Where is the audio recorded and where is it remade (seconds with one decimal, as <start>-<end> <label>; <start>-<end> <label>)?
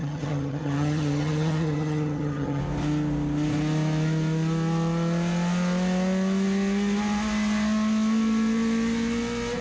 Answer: 0.0-2.6 remade; 2.6-9.6 recorded